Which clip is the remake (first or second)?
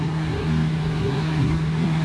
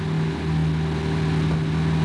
first